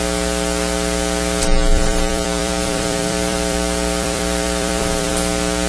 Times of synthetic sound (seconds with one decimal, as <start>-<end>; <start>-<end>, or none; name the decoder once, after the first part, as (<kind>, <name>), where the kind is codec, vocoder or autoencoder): 1.7-5.1 (vocoder, BigVGAN v2)